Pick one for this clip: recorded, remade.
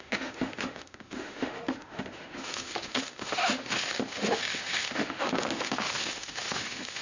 remade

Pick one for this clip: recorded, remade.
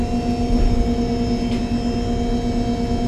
recorded